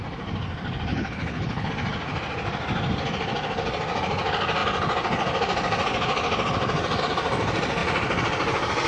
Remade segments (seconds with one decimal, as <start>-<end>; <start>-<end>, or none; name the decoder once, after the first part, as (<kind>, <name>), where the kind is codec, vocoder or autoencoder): 0.9-1.7 (codec, HILCodec)